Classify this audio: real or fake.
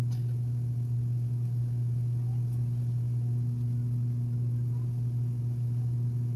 real